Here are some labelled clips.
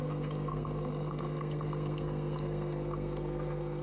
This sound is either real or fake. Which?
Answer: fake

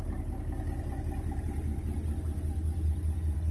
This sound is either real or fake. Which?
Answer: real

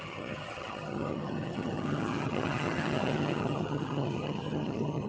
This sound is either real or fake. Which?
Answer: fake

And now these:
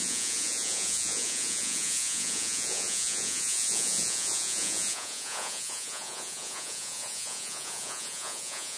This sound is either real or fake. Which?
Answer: fake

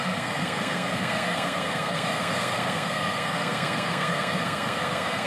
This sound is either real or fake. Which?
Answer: fake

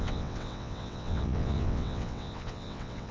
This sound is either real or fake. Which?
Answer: fake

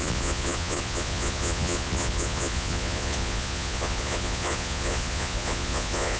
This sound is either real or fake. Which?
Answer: fake